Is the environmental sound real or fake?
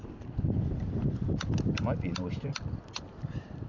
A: real